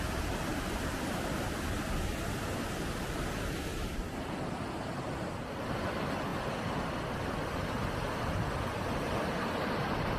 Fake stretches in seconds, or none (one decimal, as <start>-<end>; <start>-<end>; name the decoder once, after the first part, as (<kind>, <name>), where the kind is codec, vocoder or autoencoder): 0.5-1.6 (vocoder, BigVGAN v2); 3.7-4.3